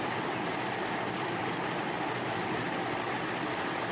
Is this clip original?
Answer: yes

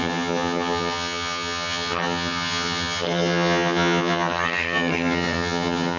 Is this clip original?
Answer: no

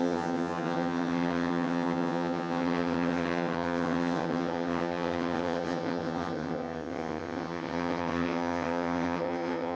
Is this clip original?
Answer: no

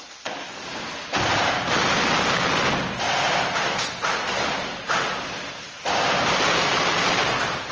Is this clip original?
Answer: yes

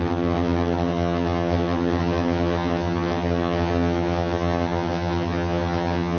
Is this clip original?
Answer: no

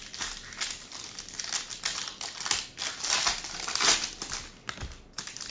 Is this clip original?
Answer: yes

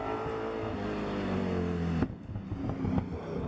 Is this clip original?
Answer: yes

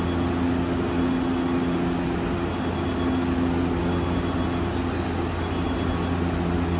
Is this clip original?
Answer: yes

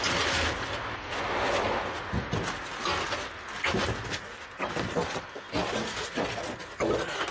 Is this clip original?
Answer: yes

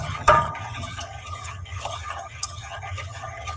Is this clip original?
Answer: no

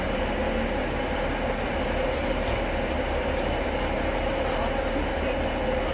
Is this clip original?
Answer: yes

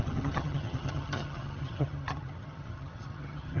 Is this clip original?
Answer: no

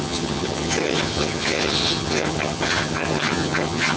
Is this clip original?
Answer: no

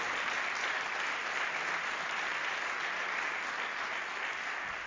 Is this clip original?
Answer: yes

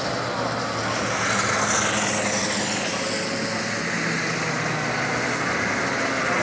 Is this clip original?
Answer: yes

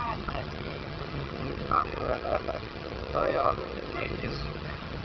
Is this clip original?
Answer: no